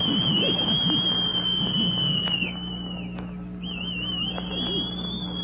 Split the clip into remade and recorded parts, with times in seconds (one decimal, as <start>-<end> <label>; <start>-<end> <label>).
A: 0.0-5.4 recorded